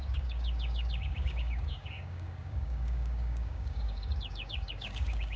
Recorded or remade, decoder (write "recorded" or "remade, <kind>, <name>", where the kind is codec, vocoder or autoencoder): remade, codec, DAC